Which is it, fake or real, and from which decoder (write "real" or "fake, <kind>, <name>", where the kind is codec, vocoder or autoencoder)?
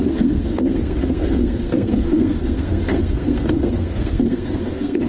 fake, codec, SNAC